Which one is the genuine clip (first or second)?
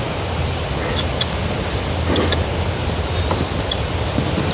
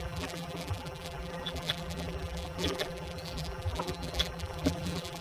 first